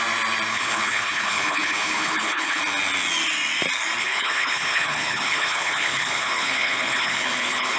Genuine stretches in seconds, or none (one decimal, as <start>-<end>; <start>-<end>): 0.0-0.5; 2.6-4.0